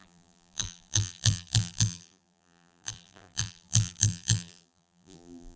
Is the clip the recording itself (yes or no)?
no